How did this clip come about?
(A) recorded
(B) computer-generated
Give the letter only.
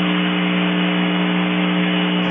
B